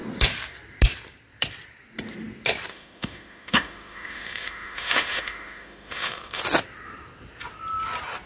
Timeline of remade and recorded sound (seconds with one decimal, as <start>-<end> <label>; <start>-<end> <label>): 0.0-2.7 recorded; 2.7-6.4 remade; 6.4-8.3 recorded